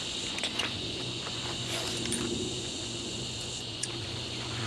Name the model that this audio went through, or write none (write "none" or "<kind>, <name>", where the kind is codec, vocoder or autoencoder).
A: vocoder, Vocos